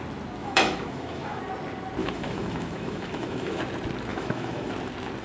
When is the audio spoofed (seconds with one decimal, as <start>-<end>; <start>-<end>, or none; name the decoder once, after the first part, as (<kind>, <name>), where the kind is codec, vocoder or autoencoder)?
0.4-1.4 (autoencoder, DAC-VAE); 2.0-3.6; 4.1-4.7